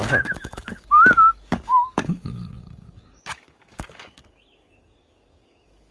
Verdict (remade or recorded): remade